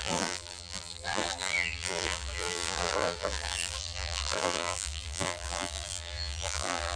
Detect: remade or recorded remade